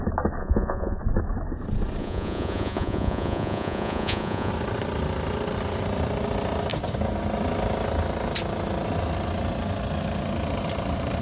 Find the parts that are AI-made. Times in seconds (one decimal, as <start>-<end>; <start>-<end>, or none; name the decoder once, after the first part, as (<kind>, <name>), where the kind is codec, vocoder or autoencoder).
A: 0.4-1.0 (vocoder, Vocos); 2.0-4.5